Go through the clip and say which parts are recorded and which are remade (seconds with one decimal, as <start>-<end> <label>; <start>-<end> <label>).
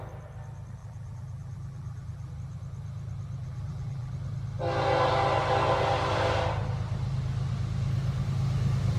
0.0-0.8 recorded; 0.8-2.3 remade; 2.3-3.4 recorded; 3.4-4.1 remade; 4.1-9.0 recorded